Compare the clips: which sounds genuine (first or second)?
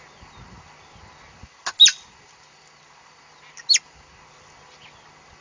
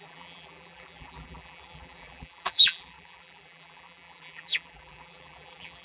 first